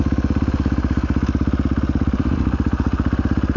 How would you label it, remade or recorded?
recorded